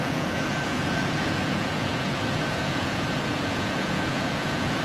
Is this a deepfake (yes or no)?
yes